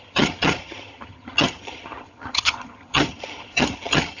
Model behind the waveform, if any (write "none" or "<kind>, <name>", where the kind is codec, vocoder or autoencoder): vocoder, HiFi-GAN